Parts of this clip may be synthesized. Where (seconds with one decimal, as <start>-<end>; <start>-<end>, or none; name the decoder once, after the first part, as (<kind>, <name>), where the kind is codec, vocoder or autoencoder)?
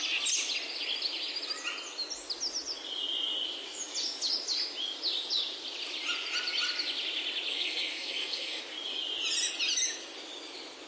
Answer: 7.5-8.6 (codec, SNAC)